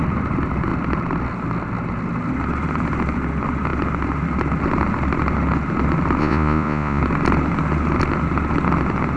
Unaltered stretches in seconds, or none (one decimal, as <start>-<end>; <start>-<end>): 0.0-6.2; 7.0-9.2